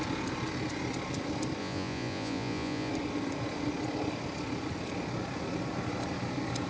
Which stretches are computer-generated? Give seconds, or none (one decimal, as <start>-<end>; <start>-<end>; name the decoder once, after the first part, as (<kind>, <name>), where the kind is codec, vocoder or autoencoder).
1.6-2.9 (vocoder, Vocos)